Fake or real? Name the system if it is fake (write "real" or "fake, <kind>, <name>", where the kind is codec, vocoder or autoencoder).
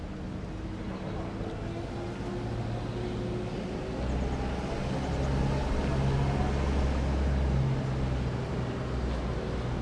real